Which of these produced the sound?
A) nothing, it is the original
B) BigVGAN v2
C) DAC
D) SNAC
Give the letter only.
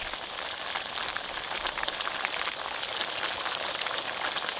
A